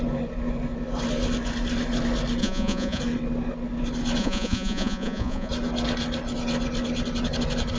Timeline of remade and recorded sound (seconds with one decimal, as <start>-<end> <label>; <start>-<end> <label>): 0.0-2.4 recorded; 2.4-3.0 remade; 3.0-4.2 recorded; 4.2-5.5 remade; 5.5-7.8 recorded